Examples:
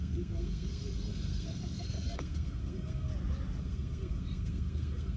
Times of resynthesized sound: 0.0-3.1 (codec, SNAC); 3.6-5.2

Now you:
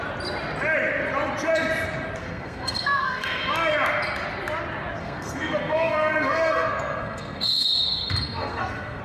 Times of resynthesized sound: 2.2-3.5 (codec, SNAC); 5.0-9.0

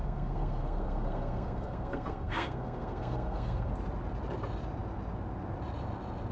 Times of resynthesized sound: 0.0-3.7 (codec, SNAC)

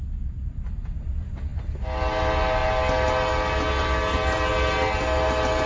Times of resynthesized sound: none

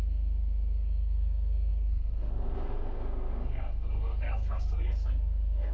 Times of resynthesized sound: 0.0-5.7 (codec, SNAC)

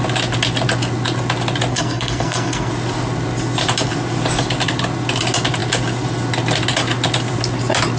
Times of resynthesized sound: 1.7-2.7 (codec, SNAC)

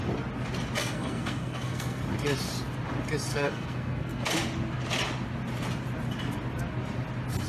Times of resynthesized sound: 0.8-2.0 (codec, SNAC); 3.3-4.3